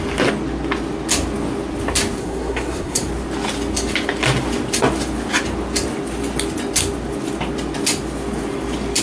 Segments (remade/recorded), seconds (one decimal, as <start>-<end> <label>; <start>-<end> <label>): 0.0-2.2 recorded; 2.2-3.0 remade; 3.0-9.0 recorded